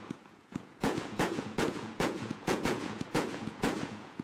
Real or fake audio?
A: fake